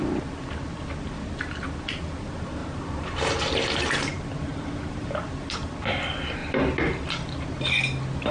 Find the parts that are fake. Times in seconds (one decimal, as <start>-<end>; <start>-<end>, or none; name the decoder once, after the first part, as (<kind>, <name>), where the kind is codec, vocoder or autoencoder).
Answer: 2.6-3.4 (vocoder, BigVGAN v2); 4.5-5.3